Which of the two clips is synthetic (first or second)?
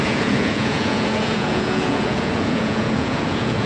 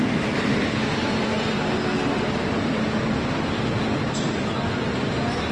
first